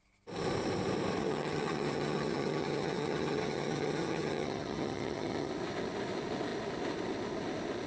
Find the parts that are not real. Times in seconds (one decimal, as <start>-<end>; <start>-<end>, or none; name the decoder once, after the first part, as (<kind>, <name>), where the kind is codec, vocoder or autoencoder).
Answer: 1.2-5.5 (vocoder, HiFi-GAN)